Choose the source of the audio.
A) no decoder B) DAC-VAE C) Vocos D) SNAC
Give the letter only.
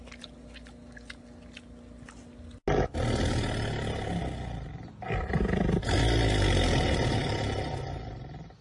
A